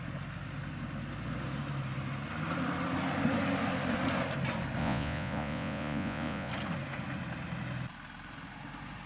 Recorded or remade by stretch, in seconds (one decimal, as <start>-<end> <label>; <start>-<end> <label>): 0.0-4.8 recorded; 4.8-6.5 remade; 6.5-9.1 recorded